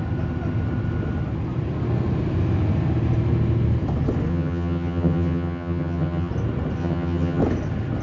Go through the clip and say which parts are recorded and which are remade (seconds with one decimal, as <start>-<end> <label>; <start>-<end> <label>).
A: 0.0-4.3 recorded; 4.3-6.3 remade; 6.3-6.8 recorded; 6.8-7.4 remade; 7.4-8.0 recorded